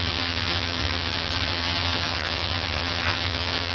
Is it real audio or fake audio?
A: fake